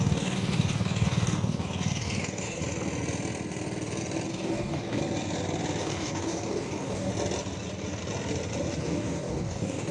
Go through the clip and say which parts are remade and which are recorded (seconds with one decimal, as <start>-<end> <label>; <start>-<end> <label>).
0.0-2.6 remade; 2.6-4.3 recorded; 4.3-5.0 remade; 5.0-5.8 recorded; 5.8-7.1 remade; 7.1-8.8 recorded; 8.8-9.9 remade